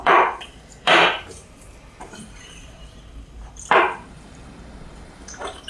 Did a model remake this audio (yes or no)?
yes